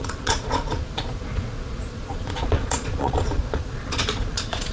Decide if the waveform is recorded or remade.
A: remade